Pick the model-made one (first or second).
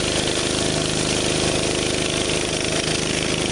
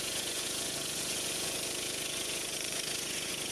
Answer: second